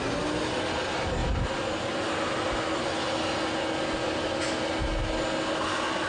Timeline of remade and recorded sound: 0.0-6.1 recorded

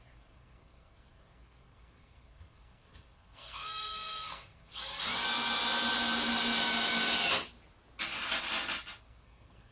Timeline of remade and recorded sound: 0.0-4.9 remade; 4.9-9.0 recorded; 9.0-9.7 remade

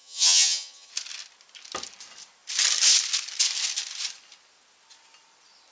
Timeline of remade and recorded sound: 0.0-0.9 remade; 0.9-5.7 recorded

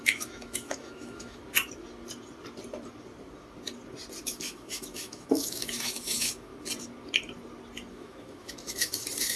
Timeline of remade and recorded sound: 0.0-1.4 remade; 1.4-4.2 recorded; 4.2-6.5 remade; 6.5-7.9 recorded; 7.9-9.4 remade